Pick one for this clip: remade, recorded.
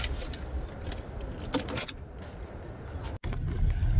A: recorded